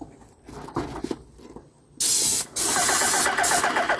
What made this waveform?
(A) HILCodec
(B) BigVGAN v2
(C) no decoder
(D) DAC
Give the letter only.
C